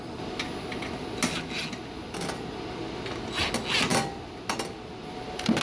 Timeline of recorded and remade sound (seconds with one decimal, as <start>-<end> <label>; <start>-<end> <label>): 0.0-5.6 recorded